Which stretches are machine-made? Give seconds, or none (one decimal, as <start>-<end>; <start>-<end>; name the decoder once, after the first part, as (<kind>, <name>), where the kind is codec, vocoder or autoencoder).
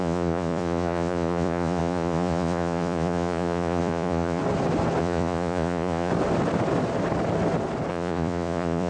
0.0-4.4 (vocoder, Vocos); 5.0-6.1; 7.9-8.9